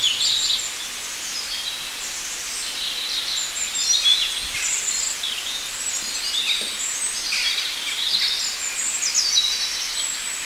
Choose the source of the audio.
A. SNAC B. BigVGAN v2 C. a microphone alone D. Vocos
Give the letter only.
C